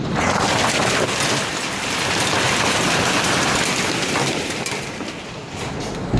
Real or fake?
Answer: real